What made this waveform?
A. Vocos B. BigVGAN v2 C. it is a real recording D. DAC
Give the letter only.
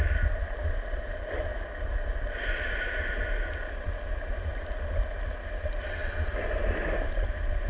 C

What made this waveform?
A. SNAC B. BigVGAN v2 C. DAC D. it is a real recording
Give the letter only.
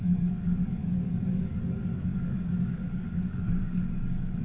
C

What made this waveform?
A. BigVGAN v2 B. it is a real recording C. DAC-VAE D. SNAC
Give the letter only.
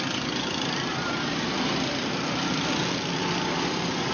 B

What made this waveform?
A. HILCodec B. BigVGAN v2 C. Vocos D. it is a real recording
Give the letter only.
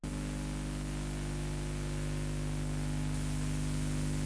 D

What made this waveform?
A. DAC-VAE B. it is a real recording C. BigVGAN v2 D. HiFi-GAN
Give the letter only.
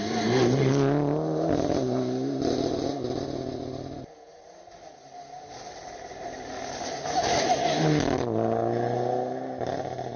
B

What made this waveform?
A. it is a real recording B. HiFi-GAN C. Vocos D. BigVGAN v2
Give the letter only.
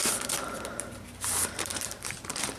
D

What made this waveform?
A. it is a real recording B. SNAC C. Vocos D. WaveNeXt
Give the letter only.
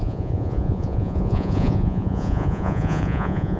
C